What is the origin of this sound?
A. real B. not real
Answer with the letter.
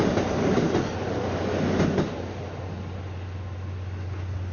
A